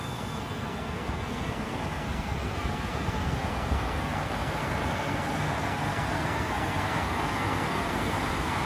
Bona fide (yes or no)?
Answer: no